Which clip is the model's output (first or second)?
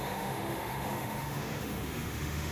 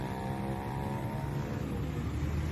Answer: first